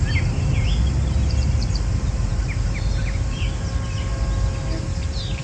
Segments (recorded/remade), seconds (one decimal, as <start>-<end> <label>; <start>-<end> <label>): 0.0-5.4 recorded